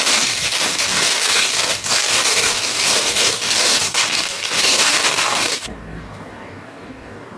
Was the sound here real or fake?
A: fake